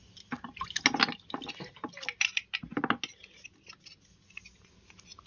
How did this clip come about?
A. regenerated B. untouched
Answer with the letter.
B